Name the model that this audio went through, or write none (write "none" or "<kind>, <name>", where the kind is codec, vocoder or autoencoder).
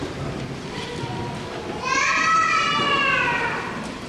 vocoder, BigVGAN v2